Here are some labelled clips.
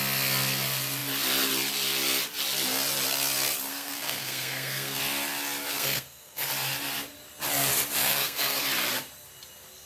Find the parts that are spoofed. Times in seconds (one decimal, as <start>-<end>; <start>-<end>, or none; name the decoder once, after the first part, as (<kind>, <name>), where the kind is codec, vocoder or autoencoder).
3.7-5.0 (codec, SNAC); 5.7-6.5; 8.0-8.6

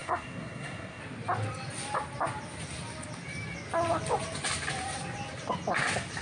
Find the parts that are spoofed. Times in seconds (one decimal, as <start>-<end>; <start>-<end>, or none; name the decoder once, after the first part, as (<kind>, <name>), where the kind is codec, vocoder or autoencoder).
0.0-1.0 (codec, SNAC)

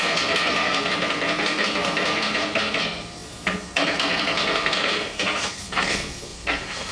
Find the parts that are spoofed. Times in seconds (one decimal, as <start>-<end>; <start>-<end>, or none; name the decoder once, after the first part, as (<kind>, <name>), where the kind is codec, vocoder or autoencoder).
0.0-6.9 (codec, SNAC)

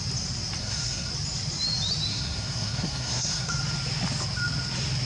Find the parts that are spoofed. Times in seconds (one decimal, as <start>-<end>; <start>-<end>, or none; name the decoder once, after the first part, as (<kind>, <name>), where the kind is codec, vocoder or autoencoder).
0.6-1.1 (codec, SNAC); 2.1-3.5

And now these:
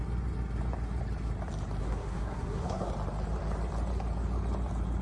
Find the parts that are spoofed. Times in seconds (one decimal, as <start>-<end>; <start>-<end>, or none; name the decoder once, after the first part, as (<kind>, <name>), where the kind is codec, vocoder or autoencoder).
1.8-2.9 (codec, SNAC)